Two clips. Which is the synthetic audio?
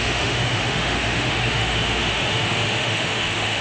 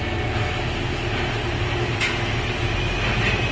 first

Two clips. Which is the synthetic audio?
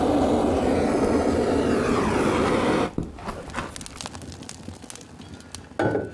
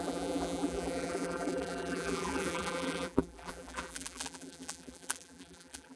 second